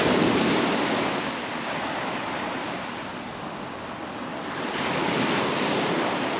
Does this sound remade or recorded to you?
recorded